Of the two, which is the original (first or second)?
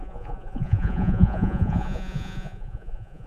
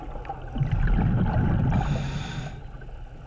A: second